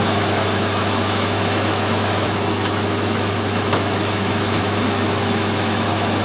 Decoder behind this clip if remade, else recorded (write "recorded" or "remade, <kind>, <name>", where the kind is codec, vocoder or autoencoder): remade, autoencoder, DAC-VAE